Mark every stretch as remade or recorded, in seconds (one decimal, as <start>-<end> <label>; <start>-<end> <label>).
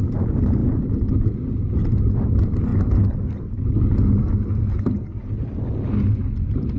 0.0-6.8 recorded